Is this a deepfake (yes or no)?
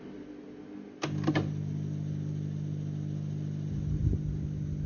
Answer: no